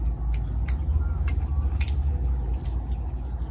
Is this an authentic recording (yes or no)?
yes